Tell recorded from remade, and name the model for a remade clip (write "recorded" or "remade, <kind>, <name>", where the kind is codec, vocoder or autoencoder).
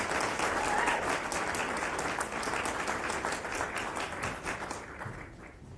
recorded